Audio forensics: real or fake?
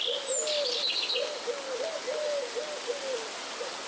real